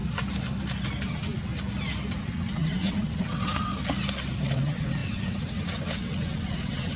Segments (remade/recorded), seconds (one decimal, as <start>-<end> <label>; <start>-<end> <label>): 0.0-1.1 recorded; 1.1-1.5 remade; 1.5-2.1 recorded; 2.1-3.7 remade; 3.7-4.5 recorded; 4.5-7.0 remade